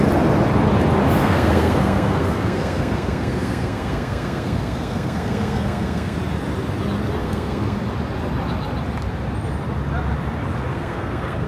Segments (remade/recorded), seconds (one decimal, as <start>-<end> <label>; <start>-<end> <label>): 0.0-1.2 recorded; 1.2-6.2 remade; 6.2-7.2 recorded; 7.2-7.8 remade; 7.8-10.7 recorded; 10.7-11.5 remade